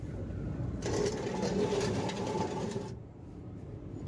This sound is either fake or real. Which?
fake